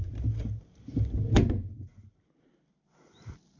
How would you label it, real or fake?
real